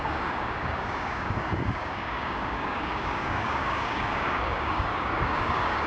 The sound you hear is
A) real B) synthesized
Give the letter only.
B